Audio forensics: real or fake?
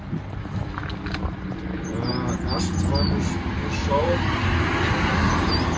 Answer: real